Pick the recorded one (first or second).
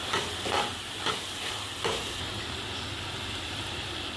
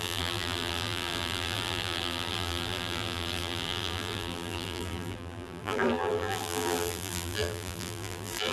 first